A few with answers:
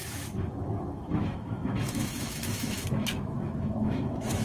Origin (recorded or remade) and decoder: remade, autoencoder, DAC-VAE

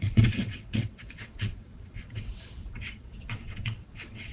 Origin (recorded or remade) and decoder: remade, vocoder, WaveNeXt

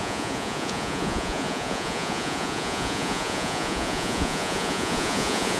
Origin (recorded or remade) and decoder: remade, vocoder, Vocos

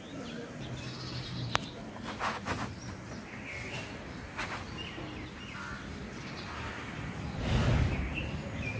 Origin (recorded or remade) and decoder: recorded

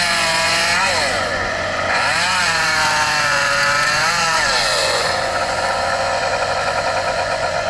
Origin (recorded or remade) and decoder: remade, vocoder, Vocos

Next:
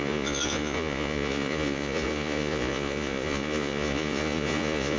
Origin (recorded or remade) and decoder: remade, vocoder, Vocos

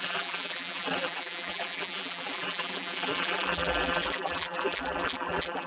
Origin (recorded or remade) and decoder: remade, vocoder, BigVGAN v2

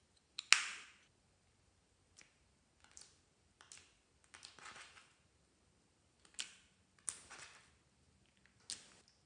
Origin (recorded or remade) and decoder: recorded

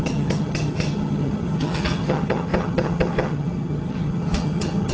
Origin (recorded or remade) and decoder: remade, vocoder, HiFi-GAN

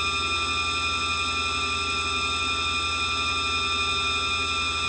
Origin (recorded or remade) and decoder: recorded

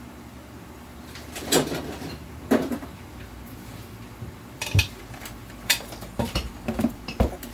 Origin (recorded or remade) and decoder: remade, vocoder, BigVGAN v2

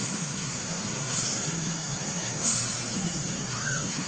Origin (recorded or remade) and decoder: remade, codec, SNAC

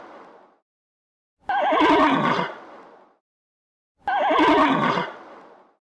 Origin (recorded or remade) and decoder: recorded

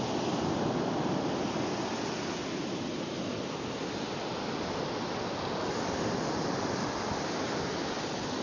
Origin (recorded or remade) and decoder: recorded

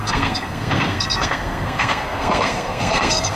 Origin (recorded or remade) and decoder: remade, codec, SNAC